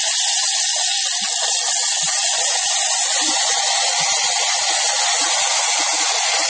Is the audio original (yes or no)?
yes